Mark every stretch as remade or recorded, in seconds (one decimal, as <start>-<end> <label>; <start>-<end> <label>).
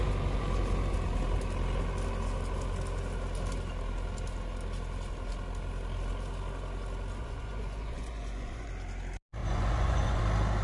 0.0-7.2 recorded; 7.2-8.7 remade; 8.7-9.4 recorded; 9.4-10.2 remade; 10.2-10.6 recorded